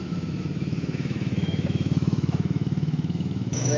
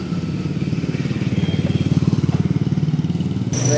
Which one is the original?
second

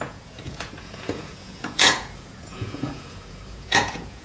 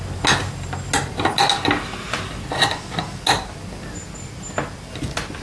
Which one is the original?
second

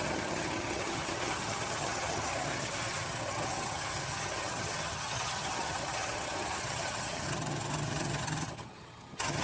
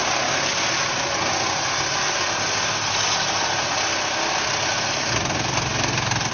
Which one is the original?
second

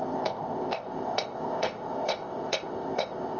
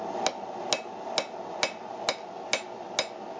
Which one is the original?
second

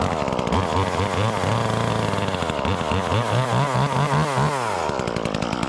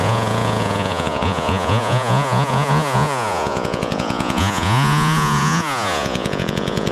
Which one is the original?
first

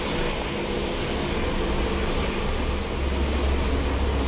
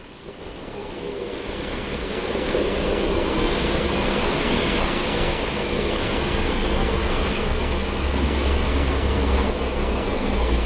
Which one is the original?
first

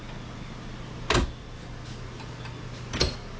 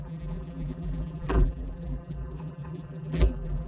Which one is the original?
first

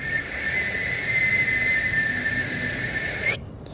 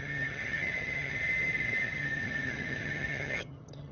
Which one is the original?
first